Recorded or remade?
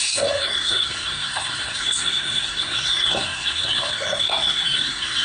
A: remade